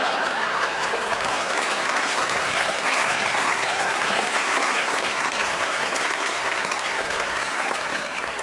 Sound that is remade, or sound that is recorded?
remade